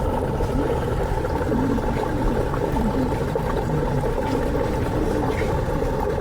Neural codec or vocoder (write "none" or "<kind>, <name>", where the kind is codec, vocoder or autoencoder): none